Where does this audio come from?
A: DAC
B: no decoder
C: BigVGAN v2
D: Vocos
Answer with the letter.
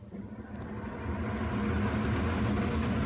B